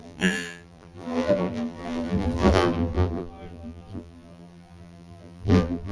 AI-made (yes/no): yes